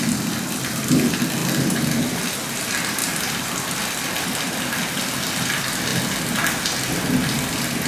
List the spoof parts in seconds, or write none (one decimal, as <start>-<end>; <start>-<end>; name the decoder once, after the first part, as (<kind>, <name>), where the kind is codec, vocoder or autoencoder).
none